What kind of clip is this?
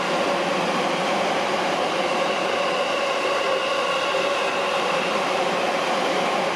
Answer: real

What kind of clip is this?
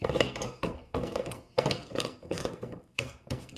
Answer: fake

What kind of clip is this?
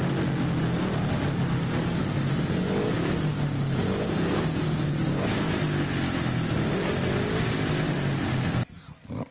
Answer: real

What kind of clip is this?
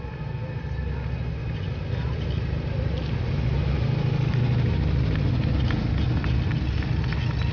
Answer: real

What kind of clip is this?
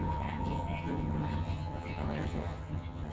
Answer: fake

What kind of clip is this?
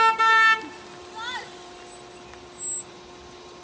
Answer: real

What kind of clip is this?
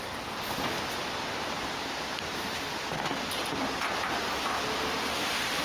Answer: real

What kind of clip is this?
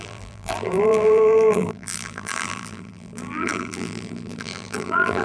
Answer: fake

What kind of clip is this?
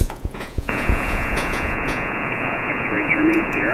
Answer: fake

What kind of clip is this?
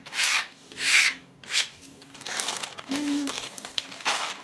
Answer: fake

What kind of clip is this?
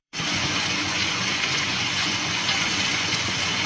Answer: fake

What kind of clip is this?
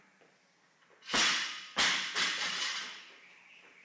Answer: real